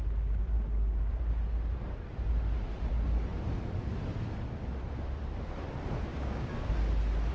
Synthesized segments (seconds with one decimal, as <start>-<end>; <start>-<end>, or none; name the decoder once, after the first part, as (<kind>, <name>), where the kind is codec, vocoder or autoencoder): 6.1-6.7 (codec, DAC)